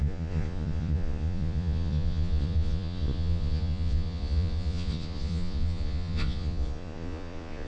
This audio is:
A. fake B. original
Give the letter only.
A